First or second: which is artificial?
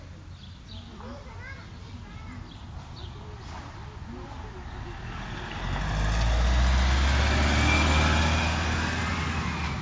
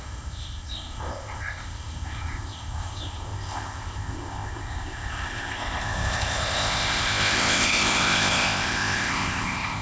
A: second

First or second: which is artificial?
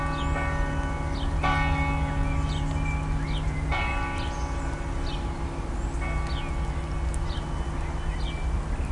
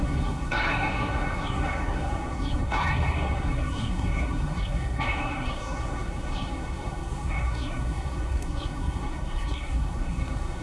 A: second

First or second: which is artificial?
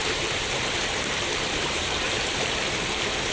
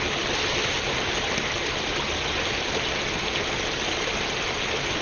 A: first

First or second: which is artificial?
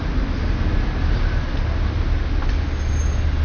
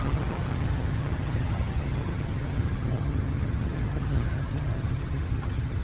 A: second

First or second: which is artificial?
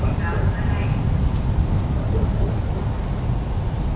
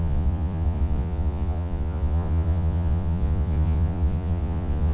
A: second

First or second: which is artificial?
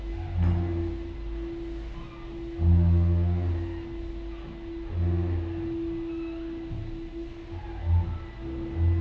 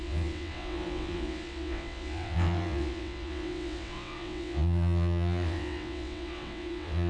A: second